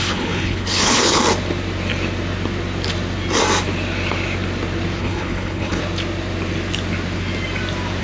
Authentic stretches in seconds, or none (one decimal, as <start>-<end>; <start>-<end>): 1.2-5.0; 5.8-8.0